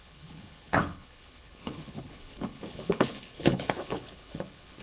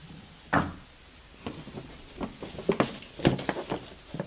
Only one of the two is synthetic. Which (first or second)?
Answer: first